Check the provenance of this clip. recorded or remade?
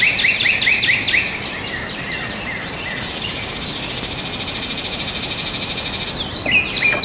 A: recorded